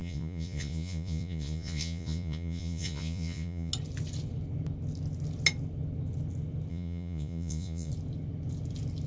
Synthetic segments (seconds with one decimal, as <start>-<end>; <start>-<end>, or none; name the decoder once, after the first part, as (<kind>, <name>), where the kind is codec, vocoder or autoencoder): 0.0-3.7 (vocoder, Vocos); 6.7-7.9